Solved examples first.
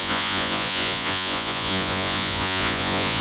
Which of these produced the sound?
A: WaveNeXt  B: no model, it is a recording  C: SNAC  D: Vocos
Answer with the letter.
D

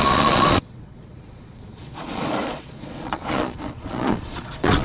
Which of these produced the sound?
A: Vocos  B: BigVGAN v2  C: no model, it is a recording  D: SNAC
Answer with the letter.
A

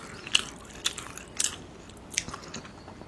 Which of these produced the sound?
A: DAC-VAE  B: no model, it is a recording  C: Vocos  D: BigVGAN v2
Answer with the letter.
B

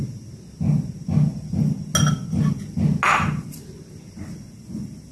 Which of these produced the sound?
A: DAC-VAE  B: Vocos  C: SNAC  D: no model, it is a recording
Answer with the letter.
D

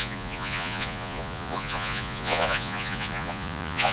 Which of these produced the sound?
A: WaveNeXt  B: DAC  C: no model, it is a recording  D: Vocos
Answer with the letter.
D